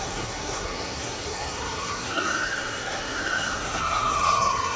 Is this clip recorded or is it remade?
remade